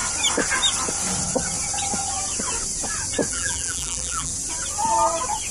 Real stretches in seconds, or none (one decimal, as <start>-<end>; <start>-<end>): 0.0-3.3; 4.3-5.5